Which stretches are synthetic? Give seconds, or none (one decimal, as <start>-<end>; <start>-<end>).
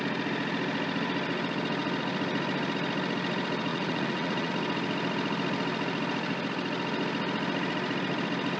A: 3.7-4.5